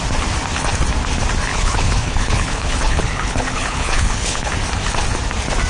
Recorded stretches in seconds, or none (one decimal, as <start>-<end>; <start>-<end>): 0.0-1.5; 4.5-5.7